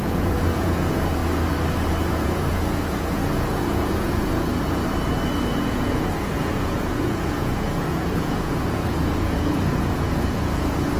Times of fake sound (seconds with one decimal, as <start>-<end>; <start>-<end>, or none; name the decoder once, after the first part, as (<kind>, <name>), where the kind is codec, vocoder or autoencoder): 0.0-1.2 (vocoder, Vocos); 2.1-4.8; 5.5-11.0